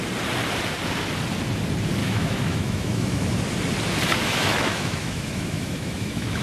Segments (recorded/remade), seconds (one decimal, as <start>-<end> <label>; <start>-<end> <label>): 0.0-2.0 recorded; 2.0-3.4 remade; 3.4-4.2 recorded; 4.2-6.4 remade